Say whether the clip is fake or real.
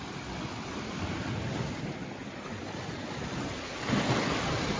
real